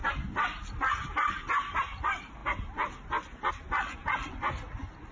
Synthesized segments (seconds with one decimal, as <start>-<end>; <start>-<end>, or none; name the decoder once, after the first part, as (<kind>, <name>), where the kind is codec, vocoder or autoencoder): none